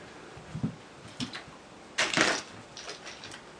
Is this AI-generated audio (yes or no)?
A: no